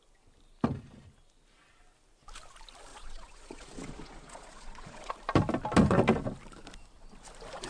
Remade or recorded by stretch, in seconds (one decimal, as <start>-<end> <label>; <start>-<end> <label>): 0.0-2.9 recorded; 2.9-5.1 remade; 5.1-7.7 recorded